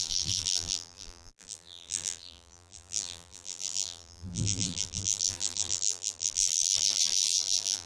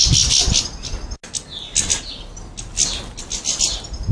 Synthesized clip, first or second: first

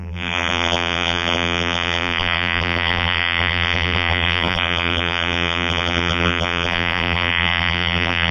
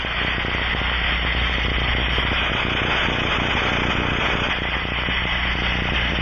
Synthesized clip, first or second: first